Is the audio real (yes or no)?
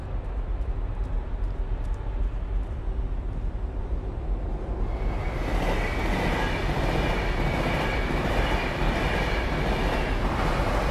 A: yes